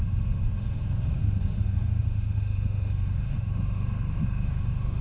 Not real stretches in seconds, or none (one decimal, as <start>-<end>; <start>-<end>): 0.0-5.0

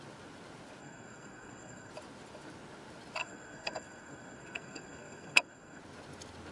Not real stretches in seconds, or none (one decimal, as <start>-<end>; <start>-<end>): 0.8-1.9; 3.2-5.8

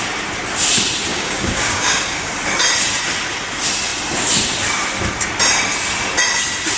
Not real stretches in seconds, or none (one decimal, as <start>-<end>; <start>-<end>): 1.1-2.3

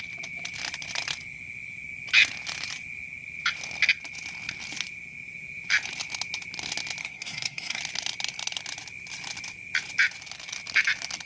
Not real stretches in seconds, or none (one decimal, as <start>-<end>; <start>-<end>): 7.0-7.8

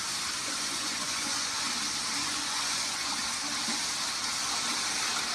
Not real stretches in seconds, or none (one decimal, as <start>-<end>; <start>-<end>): 0.4-1.7; 2.2-3.1

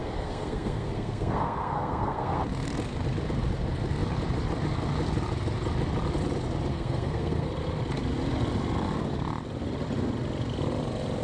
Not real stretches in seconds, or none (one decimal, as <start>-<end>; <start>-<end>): 0.0-2.4; 6.7-7.5

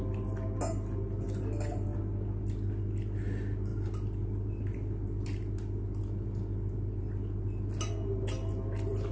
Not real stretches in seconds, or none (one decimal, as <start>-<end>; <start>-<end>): none

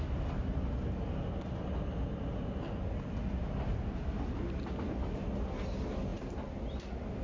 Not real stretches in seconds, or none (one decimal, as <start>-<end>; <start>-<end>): none